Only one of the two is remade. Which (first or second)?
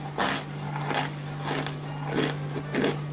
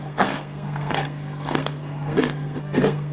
second